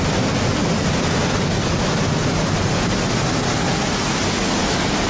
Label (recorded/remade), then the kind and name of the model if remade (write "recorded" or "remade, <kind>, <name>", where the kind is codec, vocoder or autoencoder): recorded